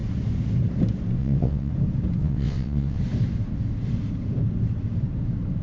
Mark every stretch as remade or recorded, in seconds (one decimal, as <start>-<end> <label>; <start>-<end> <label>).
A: 0.0-1.2 recorded; 1.2-1.7 remade; 1.7-2.2 recorded; 2.2-3.0 remade; 3.0-5.6 recorded